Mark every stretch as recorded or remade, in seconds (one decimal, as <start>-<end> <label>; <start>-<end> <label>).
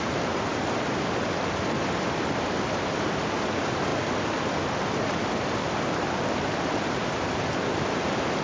0.0-8.4 recorded